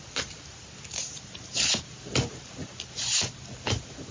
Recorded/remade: recorded